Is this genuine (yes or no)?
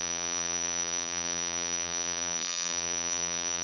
no